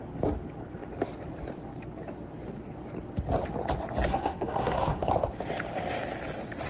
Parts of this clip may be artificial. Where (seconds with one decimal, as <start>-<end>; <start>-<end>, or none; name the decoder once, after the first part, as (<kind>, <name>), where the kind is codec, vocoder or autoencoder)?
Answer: 4.1-5.1 (codec, SNAC)